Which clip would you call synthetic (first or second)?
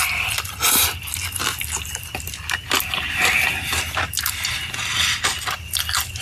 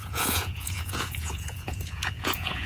second